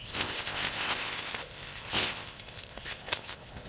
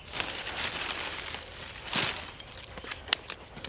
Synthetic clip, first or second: first